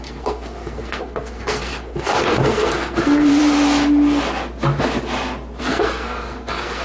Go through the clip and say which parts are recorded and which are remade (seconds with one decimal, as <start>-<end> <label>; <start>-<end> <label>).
0.0-3.4 remade; 3.4-5.6 recorded; 5.6-6.8 remade